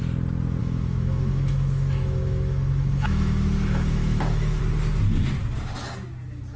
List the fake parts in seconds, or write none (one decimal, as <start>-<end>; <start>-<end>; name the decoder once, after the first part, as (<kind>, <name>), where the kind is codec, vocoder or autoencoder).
0.6-4.6 (autoencoder, DAC-VAE)